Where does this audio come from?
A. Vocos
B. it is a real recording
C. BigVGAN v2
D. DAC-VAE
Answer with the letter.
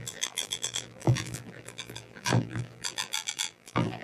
C